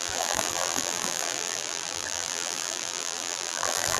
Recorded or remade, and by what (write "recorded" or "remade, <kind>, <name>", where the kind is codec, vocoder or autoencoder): remade, vocoder, BigVGAN v2